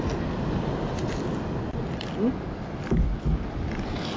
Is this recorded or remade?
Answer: recorded